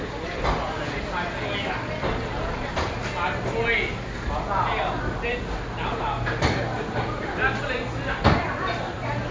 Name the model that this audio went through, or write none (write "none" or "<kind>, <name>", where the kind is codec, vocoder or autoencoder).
none